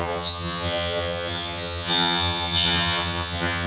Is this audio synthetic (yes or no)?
yes